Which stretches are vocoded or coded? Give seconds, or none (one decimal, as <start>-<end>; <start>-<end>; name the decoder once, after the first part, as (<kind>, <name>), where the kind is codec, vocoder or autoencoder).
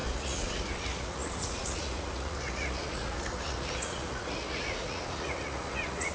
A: 0.0-6.1 (vocoder, Vocos)